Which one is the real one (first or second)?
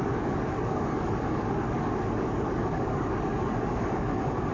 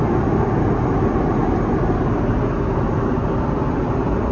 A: second